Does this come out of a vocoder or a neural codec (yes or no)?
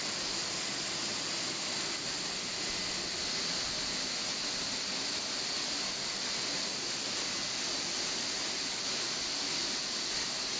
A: no